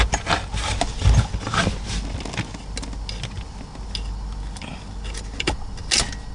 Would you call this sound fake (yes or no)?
no